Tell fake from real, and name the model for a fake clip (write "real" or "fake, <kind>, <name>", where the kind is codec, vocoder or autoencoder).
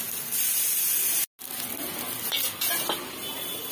real